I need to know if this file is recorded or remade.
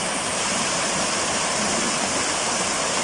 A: recorded